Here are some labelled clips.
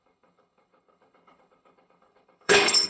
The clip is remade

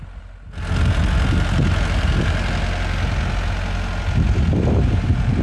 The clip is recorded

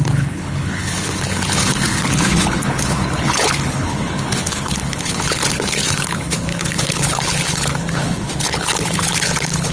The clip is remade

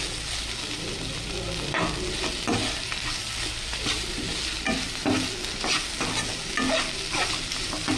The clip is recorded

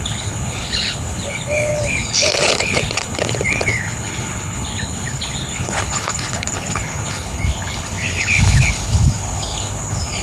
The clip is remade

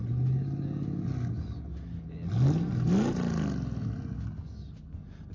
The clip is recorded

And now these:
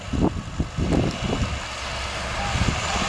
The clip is recorded